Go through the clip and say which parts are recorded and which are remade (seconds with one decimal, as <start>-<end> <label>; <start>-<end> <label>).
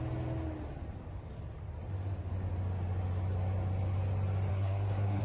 0.0-4.5 recorded; 4.5-5.2 remade